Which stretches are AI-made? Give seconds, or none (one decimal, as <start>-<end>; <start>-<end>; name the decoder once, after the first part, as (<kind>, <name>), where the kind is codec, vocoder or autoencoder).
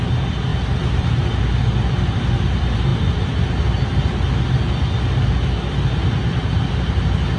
0.5-1.2 (vocoder, BigVGAN v2)